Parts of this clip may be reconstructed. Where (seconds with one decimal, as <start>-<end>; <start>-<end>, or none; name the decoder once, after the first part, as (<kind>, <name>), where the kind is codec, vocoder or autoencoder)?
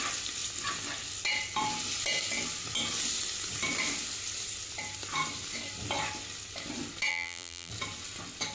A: 7.1-7.7 (vocoder, BigVGAN v2)